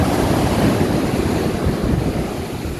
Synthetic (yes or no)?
yes